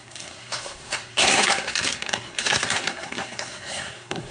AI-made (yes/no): yes